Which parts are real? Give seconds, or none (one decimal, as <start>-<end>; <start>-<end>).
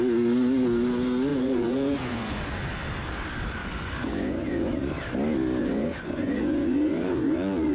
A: 0.0-1.3; 2.4-3.6; 4.7-5.6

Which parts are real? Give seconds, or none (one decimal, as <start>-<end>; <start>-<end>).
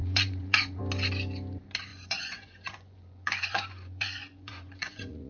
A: 0.8-1.9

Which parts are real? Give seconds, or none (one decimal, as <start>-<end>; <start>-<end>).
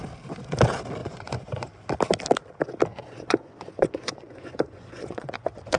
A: 0.0-1.0; 1.7-2.9